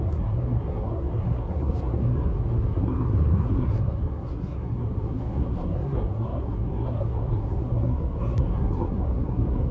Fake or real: fake